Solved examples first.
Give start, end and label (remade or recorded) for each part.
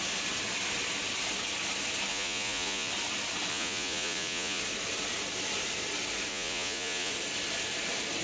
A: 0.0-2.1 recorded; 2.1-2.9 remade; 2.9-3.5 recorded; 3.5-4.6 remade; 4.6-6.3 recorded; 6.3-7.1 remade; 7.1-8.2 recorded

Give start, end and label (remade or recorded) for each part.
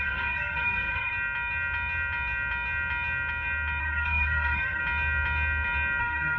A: 0.0-1.1 remade; 1.1-3.8 recorded; 3.8-4.8 remade; 4.8-6.0 recorded; 6.0-6.4 remade